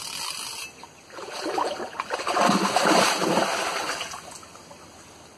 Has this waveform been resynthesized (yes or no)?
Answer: no